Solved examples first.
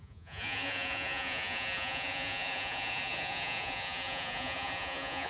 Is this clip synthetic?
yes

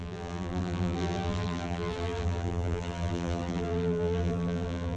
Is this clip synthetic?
yes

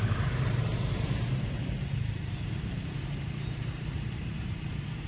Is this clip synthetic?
yes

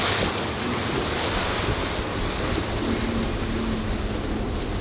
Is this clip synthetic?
no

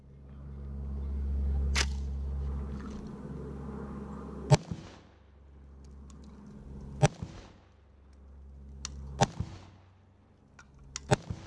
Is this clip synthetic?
no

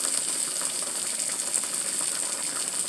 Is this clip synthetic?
no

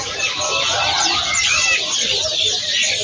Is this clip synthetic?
no